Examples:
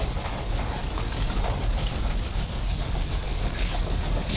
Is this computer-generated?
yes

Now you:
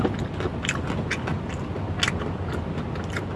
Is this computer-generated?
no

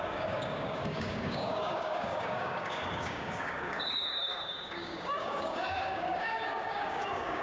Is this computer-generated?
yes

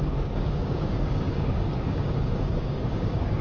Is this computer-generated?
yes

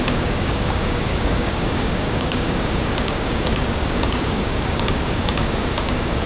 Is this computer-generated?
yes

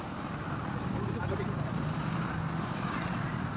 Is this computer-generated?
no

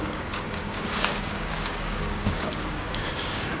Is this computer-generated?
yes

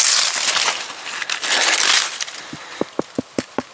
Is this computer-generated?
no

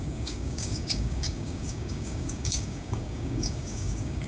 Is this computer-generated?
yes